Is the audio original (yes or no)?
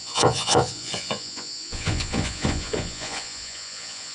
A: no